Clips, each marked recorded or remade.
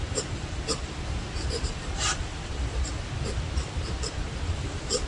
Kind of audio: recorded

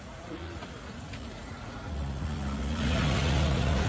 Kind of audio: remade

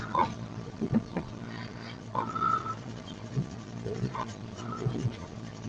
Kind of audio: remade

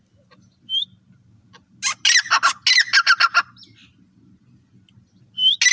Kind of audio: recorded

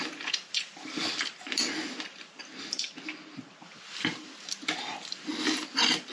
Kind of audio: recorded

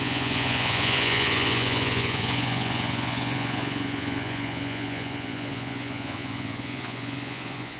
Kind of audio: remade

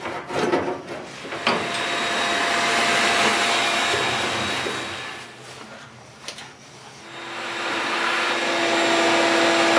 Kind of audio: recorded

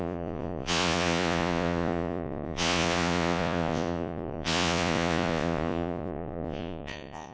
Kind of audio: remade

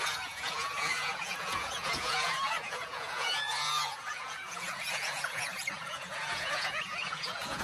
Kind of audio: remade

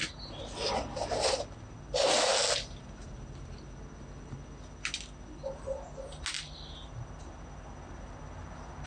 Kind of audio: recorded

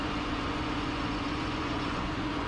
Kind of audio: remade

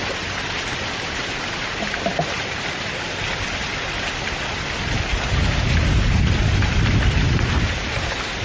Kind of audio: recorded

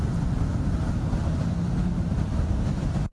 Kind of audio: recorded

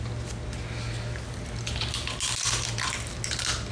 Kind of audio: recorded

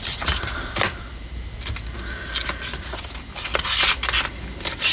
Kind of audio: recorded